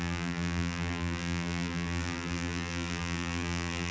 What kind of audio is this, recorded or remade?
remade